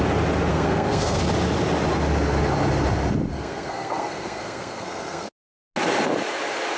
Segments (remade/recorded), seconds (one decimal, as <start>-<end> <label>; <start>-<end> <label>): 0.0-0.5 recorded; 0.5-1.2 remade; 1.2-3.3 recorded; 3.3-5.3 remade; 5.3-6.8 recorded